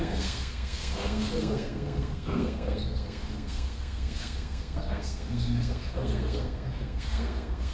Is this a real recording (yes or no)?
no